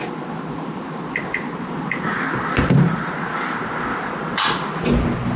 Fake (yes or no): no